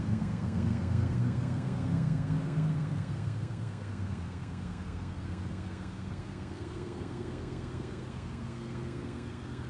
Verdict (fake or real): fake